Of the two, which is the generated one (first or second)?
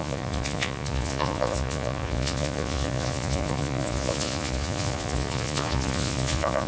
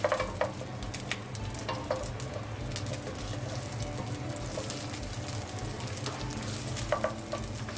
first